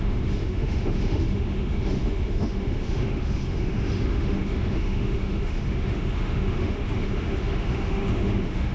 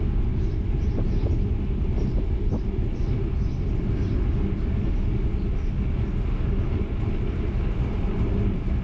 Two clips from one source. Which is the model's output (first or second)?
first